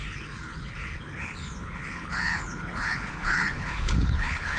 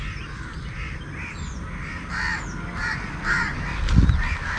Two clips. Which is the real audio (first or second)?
second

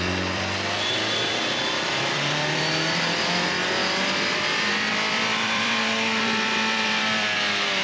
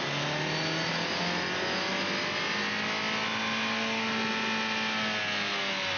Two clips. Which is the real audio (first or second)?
second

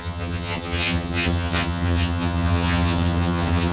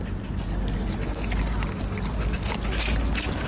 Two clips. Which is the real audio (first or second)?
second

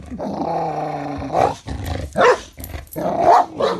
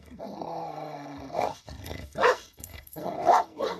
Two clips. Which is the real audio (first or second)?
first